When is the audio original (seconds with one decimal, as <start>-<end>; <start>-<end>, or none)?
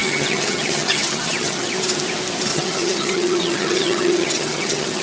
1.8-2.5